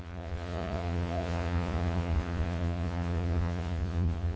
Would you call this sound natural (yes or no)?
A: no